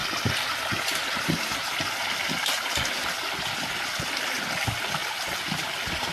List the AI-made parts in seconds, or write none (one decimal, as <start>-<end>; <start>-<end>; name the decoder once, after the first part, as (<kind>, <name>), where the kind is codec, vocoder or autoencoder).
none